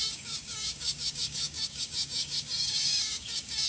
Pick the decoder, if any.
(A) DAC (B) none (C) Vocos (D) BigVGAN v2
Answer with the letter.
A